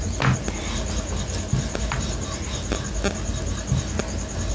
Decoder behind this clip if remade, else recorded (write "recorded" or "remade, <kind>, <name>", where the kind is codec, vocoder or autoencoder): recorded